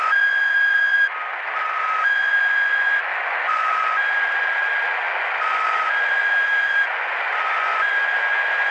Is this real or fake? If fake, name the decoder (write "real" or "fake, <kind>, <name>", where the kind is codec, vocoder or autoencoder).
fake, vocoder, Vocos